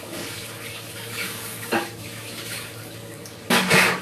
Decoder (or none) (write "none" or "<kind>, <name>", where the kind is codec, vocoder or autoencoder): codec, DAC